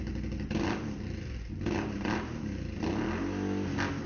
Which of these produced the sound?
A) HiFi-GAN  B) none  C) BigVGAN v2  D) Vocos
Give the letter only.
B